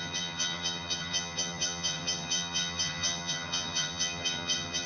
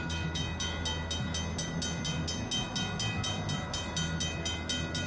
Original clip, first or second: second